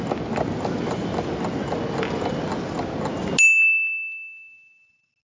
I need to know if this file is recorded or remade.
recorded